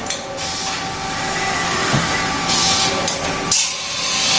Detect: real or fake real